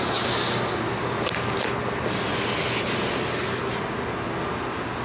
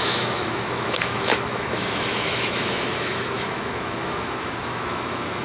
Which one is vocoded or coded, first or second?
second